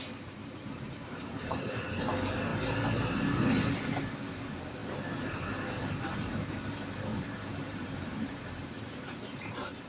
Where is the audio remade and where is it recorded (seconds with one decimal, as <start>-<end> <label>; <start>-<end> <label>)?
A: 0.0-0.4 recorded; 0.4-1.9 remade; 1.9-7.1 recorded; 7.1-9.9 remade